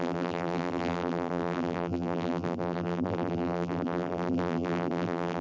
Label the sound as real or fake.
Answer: fake